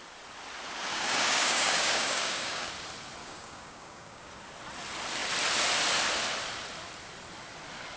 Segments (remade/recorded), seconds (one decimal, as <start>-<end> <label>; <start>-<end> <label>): 0.0-0.9 recorded; 0.9-2.7 remade; 2.7-3.2 recorded; 3.2-4.3 remade; 4.3-8.0 recorded